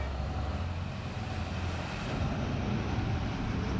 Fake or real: real